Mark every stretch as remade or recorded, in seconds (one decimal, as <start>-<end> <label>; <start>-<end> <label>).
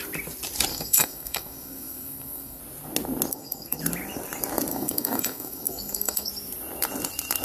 0.0-0.7 recorded; 0.7-2.6 remade; 2.6-3.3 recorded; 3.3-3.8 remade; 3.8-4.7 recorded; 4.7-6.3 remade; 6.3-7.4 recorded